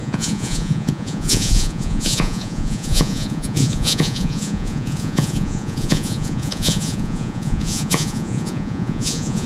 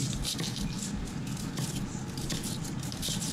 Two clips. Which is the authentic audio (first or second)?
second